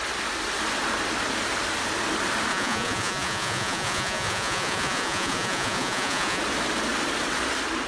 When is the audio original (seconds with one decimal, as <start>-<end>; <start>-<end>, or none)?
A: 0.0-2.5; 6.4-7.9